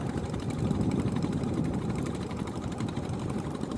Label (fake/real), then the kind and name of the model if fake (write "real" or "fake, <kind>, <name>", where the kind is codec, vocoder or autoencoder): fake, vocoder, BigVGAN v2